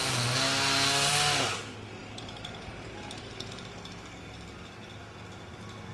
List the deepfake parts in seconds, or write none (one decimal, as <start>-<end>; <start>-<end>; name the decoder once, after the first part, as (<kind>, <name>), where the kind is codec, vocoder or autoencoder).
2.0-3.3 (vocoder, BigVGAN v2)